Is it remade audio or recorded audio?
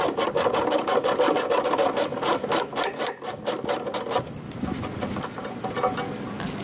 recorded